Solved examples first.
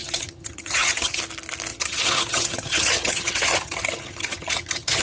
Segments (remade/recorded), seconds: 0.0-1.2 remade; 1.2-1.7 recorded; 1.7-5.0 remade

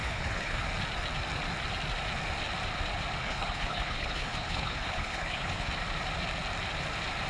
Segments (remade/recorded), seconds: 0.0-0.6 remade; 0.6-3.2 recorded; 3.2-5.7 remade; 5.7-7.3 recorded

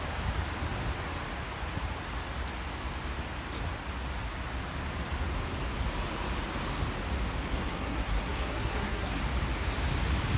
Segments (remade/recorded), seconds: 0.0-7.5 recorded; 7.5-9.2 remade; 9.2-10.4 recorded

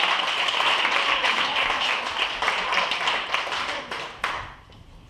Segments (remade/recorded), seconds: 0.0-1.2 recorded; 1.2-2.0 remade; 2.0-5.1 recorded

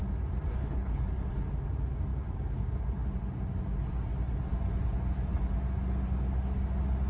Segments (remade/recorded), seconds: 0.0-0.5 recorded; 0.5-1.0 remade; 1.0-7.1 recorded

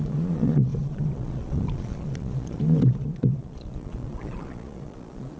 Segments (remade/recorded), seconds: 0.0-5.4 remade

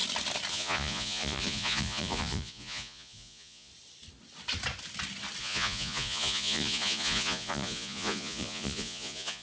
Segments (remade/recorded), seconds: 0.0-0.5 recorded; 0.5-3.7 remade; 3.7-5.4 recorded; 5.4-9.4 remade

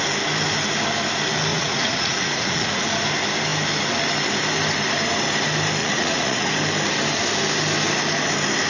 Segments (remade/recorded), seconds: 0.0-1.5 recorded; 1.5-2.8 remade; 2.8-5.8 recorded; 5.8-6.5 remade; 6.5-8.7 recorded